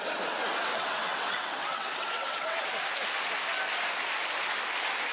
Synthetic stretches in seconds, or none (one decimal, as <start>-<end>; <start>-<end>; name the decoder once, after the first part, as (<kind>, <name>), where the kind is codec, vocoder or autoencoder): 0.7-2.7 (vocoder, WaveNeXt)

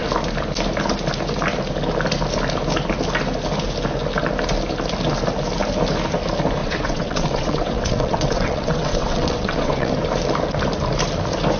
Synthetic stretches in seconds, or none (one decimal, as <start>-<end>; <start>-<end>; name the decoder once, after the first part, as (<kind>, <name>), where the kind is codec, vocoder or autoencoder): 6.6-9.9 (vocoder, WaveNeXt)

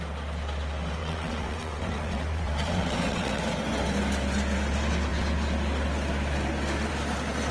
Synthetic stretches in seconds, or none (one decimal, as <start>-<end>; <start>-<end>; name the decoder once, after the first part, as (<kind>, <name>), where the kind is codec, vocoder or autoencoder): 1.0-3.4 (vocoder, WaveNeXt)

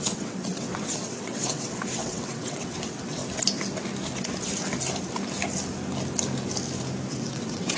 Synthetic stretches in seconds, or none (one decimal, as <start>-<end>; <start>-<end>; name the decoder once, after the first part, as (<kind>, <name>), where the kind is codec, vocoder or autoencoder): 0.0-3.2 (vocoder, WaveNeXt); 7.1-7.8

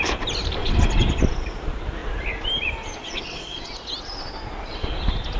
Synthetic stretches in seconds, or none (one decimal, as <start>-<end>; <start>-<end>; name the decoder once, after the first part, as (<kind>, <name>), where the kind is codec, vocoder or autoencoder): 0.6-1.2 (vocoder, WaveNeXt); 3.0-3.7